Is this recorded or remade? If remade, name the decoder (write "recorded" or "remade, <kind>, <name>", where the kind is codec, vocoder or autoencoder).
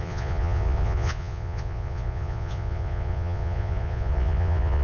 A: remade, vocoder, Vocos